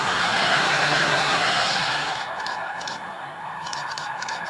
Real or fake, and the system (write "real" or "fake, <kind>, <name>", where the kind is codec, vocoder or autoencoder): fake, codec, SNAC